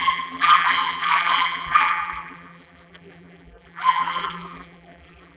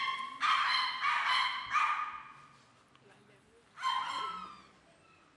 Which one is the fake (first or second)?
first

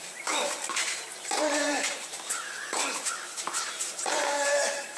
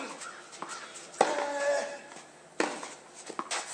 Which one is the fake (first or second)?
first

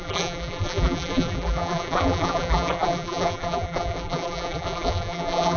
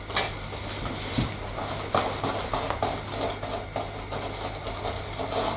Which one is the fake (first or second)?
first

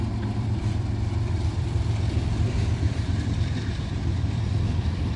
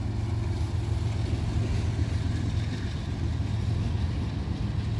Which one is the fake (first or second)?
first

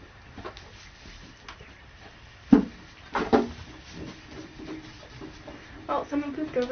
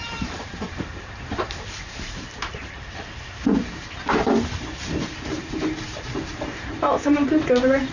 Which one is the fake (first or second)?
second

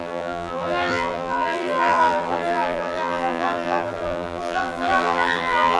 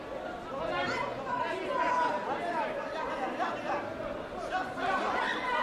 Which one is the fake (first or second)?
first